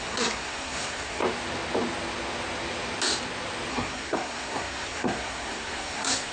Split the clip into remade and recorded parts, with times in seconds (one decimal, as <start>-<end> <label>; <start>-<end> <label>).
0.0-1.2 remade; 1.2-3.7 recorded; 3.7-6.3 remade